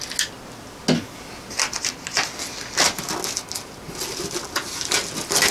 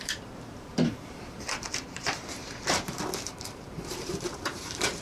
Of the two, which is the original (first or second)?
first